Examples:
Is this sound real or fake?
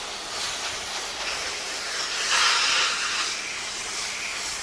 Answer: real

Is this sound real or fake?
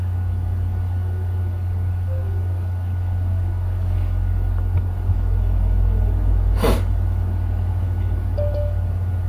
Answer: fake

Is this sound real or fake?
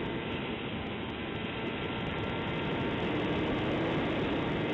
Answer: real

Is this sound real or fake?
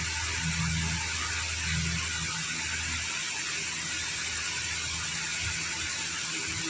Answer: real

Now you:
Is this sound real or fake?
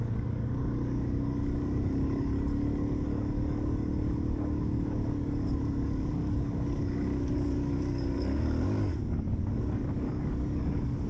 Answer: fake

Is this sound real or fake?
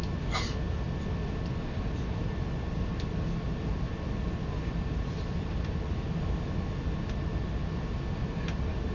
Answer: real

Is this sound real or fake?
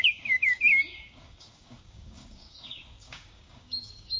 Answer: fake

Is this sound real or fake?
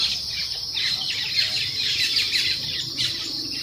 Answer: real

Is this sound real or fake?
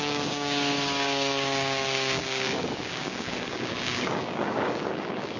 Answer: fake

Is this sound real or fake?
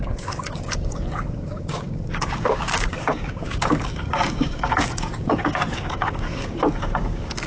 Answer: fake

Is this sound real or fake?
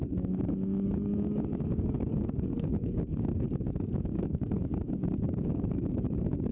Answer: fake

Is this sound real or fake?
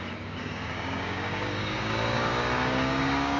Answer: fake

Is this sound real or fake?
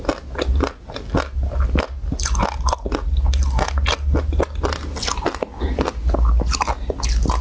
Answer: real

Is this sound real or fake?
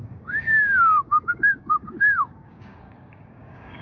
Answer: fake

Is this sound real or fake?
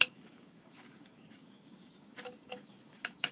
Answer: fake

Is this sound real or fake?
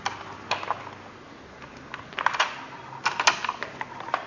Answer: real